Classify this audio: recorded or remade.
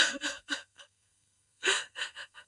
remade